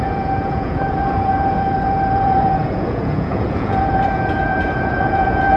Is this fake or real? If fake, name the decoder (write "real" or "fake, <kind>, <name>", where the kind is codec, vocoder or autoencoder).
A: fake, vocoder, Vocos